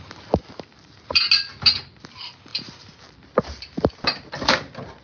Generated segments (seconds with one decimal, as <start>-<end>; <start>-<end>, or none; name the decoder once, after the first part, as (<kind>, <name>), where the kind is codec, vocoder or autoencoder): none